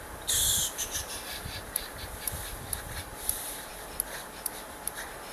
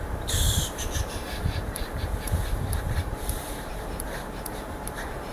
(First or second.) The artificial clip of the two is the second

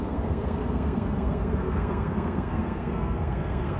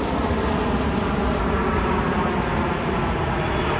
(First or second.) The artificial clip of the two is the first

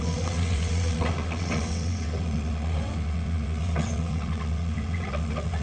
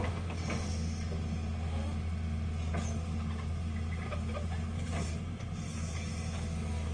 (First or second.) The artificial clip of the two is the first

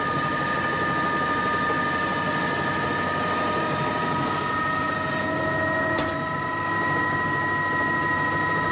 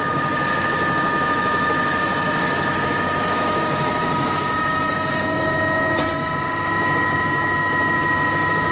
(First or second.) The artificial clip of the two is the second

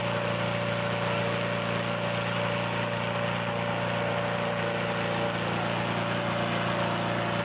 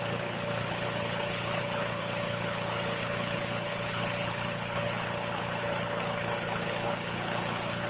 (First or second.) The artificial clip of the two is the second